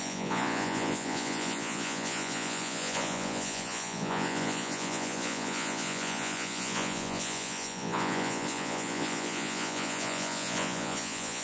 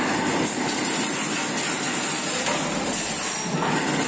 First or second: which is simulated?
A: first